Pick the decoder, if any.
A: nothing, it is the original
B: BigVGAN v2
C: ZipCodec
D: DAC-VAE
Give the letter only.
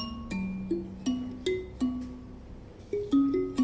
A